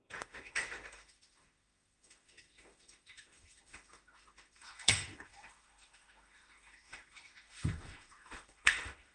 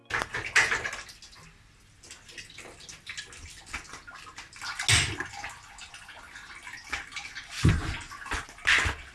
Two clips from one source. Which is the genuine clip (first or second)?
second